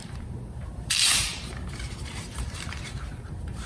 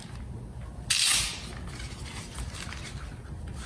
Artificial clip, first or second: first